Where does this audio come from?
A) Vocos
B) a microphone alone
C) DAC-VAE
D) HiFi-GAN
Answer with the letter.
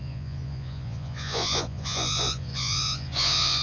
A